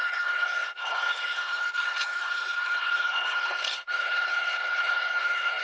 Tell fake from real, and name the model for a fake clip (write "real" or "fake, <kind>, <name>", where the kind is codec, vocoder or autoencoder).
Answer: fake, codec, HILCodec